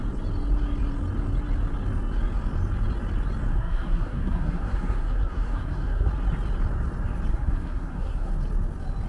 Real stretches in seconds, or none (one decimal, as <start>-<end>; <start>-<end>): 0.0-3.5; 6.1-7.3; 8.3-9.1